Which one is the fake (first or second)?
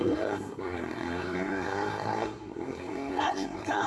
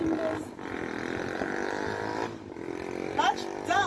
first